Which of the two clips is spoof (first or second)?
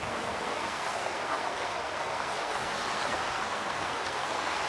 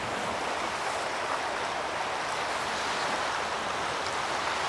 first